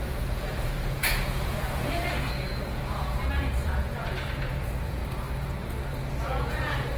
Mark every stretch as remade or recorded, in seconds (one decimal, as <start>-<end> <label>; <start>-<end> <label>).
0.0-5.0 remade; 5.0-6.2 recorded; 6.2-7.0 remade

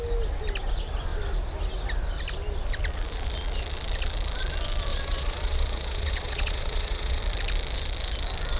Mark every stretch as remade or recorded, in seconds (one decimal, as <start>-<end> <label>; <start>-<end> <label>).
0.0-4.9 recorded; 4.9-7.2 remade; 7.2-8.6 recorded

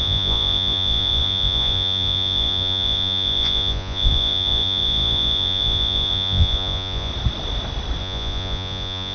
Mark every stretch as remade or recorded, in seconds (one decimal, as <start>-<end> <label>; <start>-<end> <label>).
0.0-7.1 remade; 7.1-8.0 recorded; 8.0-9.1 remade

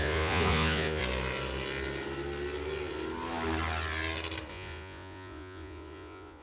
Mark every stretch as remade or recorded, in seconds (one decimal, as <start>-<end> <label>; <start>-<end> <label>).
0.0-1.0 remade; 1.0-4.5 recorded; 4.5-6.4 remade

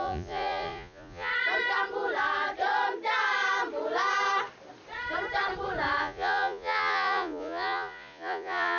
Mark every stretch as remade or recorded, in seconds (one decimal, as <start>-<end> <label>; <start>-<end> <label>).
0.0-1.3 remade; 1.3-6.0 recorded; 6.0-8.8 remade